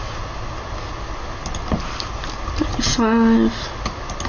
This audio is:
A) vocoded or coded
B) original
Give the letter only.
B